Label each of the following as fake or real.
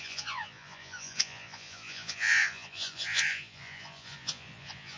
fake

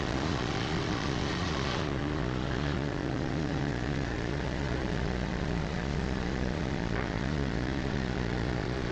fake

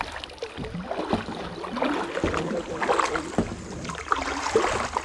real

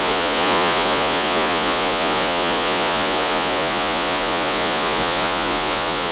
fake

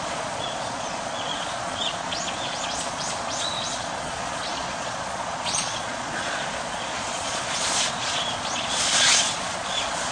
fake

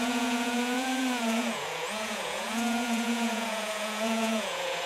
fake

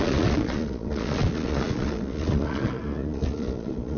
fake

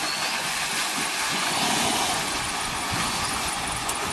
fake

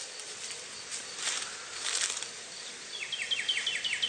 real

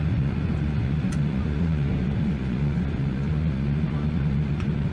fake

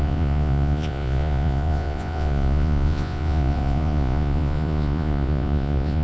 fake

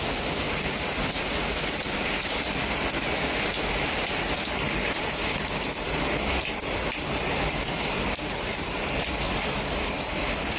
real